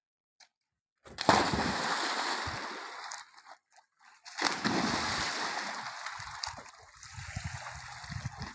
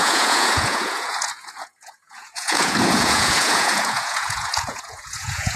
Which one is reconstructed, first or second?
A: second